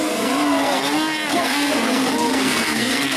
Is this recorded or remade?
remade